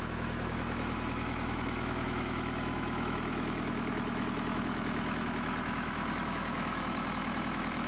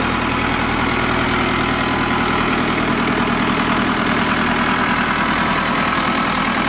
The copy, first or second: first